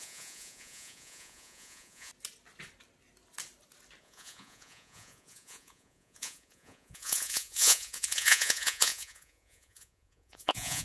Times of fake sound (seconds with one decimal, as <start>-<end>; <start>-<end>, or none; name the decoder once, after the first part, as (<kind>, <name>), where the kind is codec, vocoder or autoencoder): 0.0-2.1 (vocoder, Vocos); 4.0-10.8